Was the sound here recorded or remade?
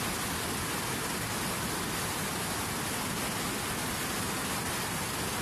recorded